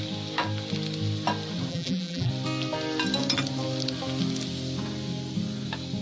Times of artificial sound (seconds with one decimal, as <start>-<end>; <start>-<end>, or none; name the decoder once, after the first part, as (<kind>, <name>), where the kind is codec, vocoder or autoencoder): 1.7-2.3 (vocoder, BigVGAN v2)